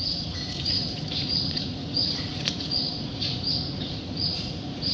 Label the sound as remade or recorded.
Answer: remade